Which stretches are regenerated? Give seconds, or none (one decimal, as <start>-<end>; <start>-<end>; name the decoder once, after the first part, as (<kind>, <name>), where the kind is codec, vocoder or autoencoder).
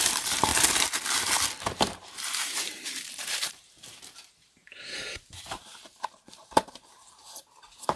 0.0-0.5 (vocoder, BigVGAN v2); 1.8-8.0